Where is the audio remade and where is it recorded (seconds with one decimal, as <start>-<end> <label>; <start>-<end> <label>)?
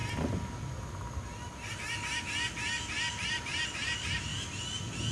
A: 0.0-3.1 recorded; 3.1-4.3 remade; 4.3-5.1 recorded